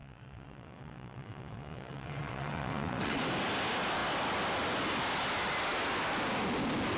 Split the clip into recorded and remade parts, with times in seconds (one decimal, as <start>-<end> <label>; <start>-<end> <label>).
0.0-3.2 remade; 3.2-7.0 recorded